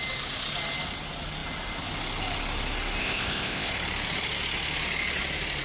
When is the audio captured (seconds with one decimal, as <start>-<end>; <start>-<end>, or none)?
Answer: 0.0-3.0; 3.7-5.6